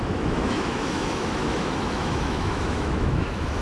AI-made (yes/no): yes